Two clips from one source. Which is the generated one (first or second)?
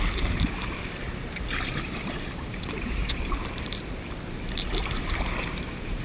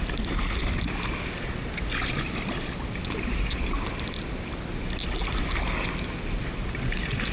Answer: first